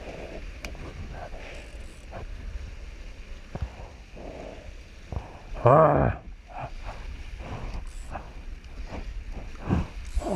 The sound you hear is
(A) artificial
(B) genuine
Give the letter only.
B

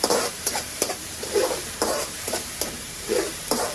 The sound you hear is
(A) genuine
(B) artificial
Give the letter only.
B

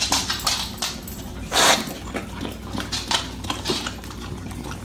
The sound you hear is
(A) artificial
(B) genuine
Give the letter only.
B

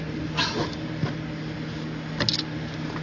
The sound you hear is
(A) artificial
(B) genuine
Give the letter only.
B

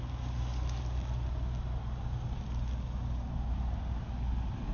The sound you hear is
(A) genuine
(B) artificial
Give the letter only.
A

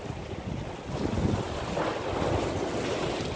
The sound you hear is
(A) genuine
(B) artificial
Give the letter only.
A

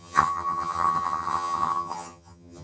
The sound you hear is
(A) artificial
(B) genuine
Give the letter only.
A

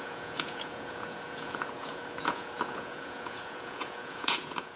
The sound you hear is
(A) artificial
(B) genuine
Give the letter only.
A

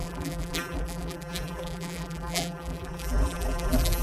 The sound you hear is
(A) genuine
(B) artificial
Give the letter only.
B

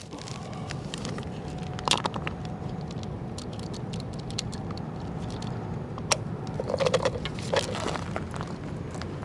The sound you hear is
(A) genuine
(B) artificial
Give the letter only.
A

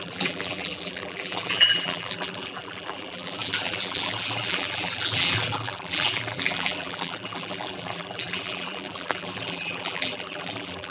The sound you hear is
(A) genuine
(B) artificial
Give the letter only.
B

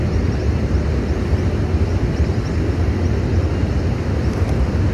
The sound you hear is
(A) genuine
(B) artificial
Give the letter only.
A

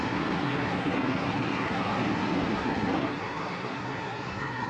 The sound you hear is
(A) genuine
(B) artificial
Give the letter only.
B